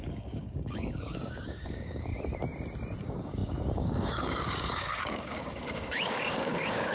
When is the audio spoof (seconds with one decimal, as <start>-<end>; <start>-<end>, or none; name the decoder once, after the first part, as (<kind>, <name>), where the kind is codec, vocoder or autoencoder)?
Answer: 0.0-2.1 (codec, DAC); 3.0-6.9